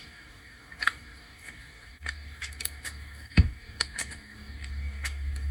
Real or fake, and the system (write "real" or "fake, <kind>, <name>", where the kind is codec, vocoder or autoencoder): fake, codec, DAC